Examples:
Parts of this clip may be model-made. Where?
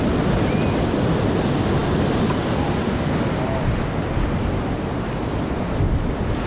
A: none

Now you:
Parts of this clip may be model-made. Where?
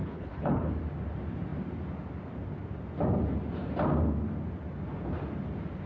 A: 0.0-0.7 (codec, HILCodec)